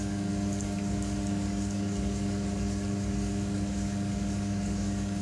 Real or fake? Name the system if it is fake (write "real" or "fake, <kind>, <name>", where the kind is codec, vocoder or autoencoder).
fake, codec, DAC